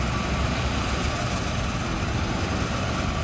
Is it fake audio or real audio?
real